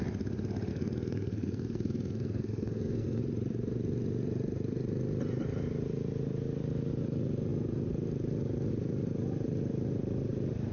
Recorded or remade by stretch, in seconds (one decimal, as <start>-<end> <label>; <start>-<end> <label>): 0.0-0.7 recorded; 0.7-3.2 remade; 3.2-10.7 recorded